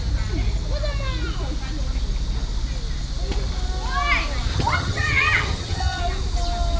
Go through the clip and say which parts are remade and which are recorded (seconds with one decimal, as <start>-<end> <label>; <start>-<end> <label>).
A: 0.0-4.5 recorded; 4.5-6.0 remade; 6.0-6.8 recorded